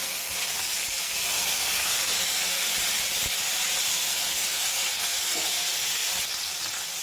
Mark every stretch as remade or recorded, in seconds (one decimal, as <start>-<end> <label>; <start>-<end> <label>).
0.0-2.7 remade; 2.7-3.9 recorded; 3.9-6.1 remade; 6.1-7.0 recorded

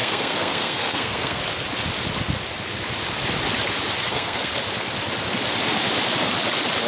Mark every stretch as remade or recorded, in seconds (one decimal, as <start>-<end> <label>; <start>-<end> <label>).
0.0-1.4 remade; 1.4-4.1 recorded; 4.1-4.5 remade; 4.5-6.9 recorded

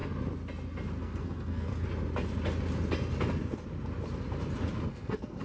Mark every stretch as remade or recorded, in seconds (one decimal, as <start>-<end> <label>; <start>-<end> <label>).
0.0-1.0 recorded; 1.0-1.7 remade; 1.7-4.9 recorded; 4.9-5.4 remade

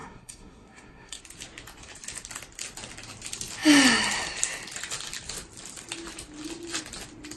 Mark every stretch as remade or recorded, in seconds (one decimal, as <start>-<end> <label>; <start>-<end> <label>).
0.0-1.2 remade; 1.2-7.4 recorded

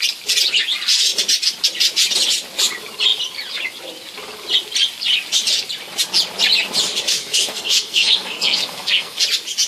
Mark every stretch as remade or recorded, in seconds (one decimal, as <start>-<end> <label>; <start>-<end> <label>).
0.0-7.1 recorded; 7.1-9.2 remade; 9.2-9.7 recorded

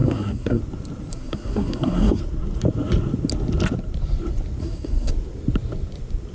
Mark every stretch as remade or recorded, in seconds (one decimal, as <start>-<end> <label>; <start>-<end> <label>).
0.0-0.6 remade; 0.6-1.1 recorded; 1.1-2.2 remade; 2.2-4.6 recorded; 4.6-5.1 remade; 5.1-6.3 recorded

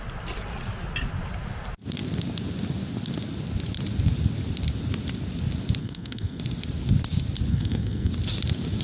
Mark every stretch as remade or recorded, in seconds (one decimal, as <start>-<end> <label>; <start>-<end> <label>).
0.0-5.8 recorded; 5.8-6.4 remade; 6.4-7.5 recorded; 7.5-8.1 remade; 8.1-8.8 recorded

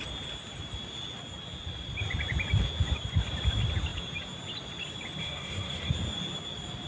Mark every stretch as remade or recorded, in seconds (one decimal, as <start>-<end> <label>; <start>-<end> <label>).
0.0-5.2 recorded; 5.2-5.9 remade; 5.9-6.9 recorded